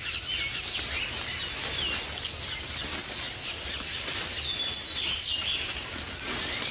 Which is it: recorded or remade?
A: recorded